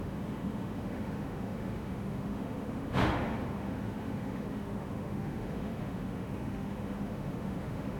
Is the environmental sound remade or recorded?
remade